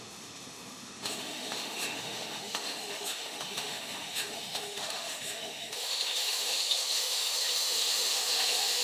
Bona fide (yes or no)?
no